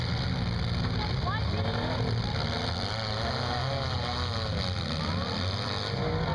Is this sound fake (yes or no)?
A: no